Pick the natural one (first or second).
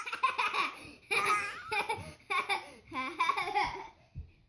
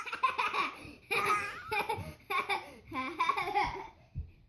first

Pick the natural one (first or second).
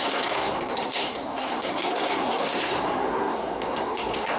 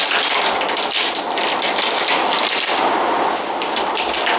second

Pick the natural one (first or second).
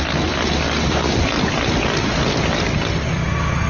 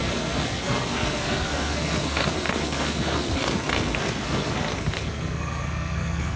first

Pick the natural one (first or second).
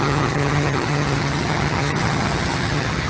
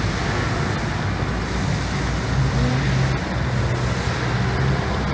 second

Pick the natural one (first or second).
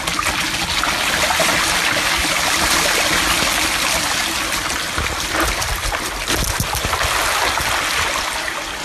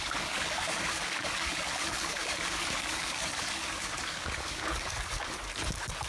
first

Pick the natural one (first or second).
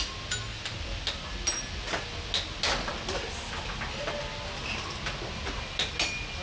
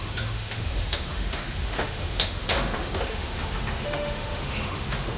first